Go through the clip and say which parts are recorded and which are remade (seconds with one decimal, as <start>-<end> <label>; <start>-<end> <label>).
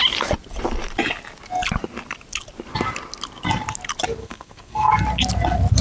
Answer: 0.0-4.2 recorded; 4.2-5.0 remade; 5.0-5.8 recorded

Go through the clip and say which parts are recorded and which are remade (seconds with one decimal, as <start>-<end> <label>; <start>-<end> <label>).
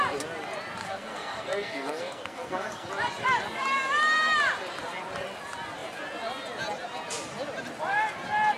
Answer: 0.0-0.8 recorded; 0.8-2.9 remade; 2.9-8.6 recorded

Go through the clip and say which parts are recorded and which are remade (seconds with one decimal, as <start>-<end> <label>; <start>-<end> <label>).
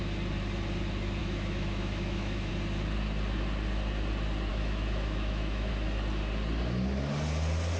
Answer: 0.0-1.2 recorded; 1.2-2.5 remade; 2.5-4.5 recorded; 4.5-5.7 remade; 5.7-7.8 recorded